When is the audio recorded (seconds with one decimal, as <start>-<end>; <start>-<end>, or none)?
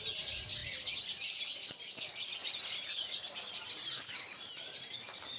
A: 0.0-2.4